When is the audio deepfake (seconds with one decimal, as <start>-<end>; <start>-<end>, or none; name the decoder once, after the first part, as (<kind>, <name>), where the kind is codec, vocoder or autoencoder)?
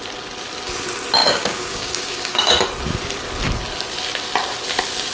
1.2-2.5 (codec, DAC)